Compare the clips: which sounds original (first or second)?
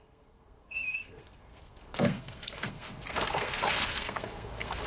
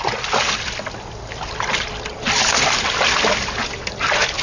second